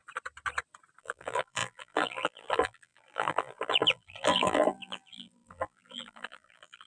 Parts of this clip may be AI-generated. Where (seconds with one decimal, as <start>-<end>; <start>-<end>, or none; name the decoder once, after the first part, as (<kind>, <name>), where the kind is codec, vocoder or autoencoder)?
1.0-6.9 (vocoder, BigVGAN v2)